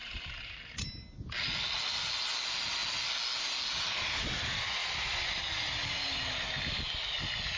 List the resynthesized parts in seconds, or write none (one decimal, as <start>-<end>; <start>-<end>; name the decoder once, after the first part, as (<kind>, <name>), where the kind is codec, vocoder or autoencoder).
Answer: none